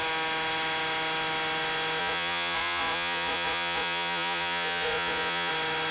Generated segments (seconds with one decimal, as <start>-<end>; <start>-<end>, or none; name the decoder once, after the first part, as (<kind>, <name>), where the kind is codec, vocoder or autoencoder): 2.0-5.5 (vocoder, Vocos)